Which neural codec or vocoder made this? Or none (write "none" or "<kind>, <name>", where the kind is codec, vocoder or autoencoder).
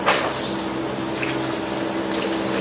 none